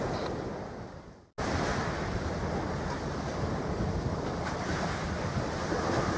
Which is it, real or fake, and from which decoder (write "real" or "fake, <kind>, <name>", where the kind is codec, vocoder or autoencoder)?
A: real